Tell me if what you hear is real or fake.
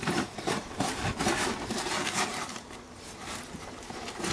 fake